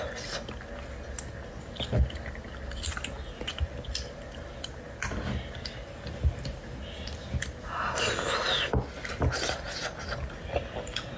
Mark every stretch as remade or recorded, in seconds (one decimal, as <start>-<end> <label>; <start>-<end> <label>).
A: 0.0-11.2 recorded